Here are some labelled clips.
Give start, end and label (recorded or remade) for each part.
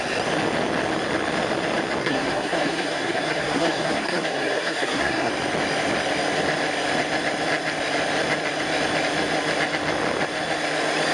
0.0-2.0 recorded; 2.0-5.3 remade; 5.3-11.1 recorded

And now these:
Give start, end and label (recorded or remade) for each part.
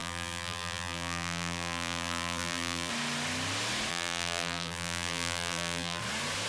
0.0-2.9 remade; 2.9-3.9 recorded; 3.9-6.0 remade; 6.0-6.5 recorded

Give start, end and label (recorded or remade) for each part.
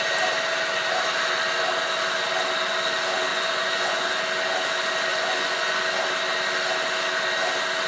0.0-3.3 recorded; 3.3-4.2 remade; 4.2-5.1 recorded; 5.1-5.8 remade; 5.8-7.9 recorded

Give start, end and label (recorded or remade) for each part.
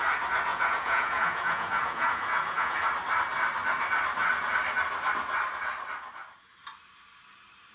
0.0-0.5 recorded; 0.5-2.8 remade; 2.8-7.7 recorded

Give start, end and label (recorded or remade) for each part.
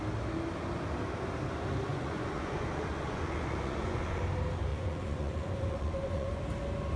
0.0-1.9 recorded; 1.9-4.2 remade; 4.2-4.7 recorded; 4.7-6.4 remade; 6.4-7.0 recorded